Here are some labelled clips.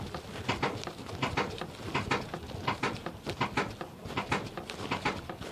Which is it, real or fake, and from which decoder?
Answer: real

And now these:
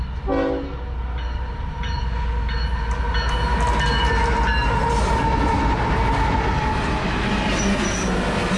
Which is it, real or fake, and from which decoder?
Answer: real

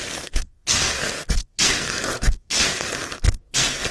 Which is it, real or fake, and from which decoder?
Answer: fake, codec, SNAC